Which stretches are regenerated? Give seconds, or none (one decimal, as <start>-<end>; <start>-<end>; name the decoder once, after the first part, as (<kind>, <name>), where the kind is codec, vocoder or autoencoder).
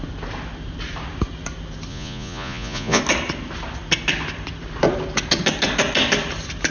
1.9-3.0 (vocoder, Vocos)